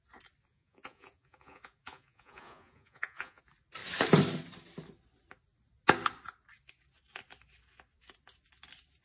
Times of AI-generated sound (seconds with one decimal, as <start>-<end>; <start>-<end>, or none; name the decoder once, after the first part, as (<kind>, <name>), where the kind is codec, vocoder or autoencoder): 0.5-3.4 (vocoder, Vocos)